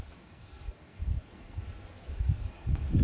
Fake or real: fake